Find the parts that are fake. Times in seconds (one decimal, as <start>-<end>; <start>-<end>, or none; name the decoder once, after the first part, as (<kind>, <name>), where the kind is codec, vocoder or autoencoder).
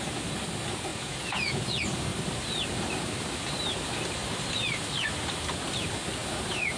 0.9-1.6 (vocoder, Vocos)